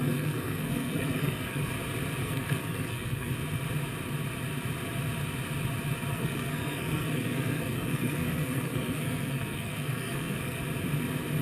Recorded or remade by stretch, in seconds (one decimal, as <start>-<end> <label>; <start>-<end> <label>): 0.0-1.7 remade; 1.7-2.2 recorded; 2.2-3.3 remade; 3.3-6.1 recorded; 6.1-10.6 remade; 10.6-11.4 recorded